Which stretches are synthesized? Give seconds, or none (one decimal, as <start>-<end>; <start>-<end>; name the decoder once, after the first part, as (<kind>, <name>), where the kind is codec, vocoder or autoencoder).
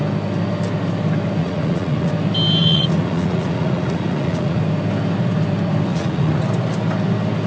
1.4-2.1 (vocoder, Vocos); 2.6-4.6; 5.9-6.4